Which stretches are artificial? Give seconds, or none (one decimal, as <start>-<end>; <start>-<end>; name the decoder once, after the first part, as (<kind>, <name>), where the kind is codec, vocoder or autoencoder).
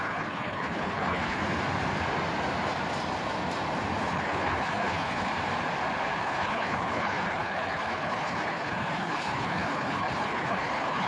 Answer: 0.0-1.4 (codec, HILCodec); 4.1-5.3; 6.2-11.1